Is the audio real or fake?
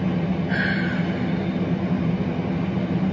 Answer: real